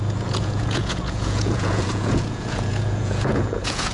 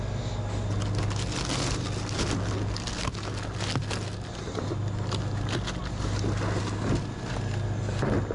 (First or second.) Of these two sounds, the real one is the second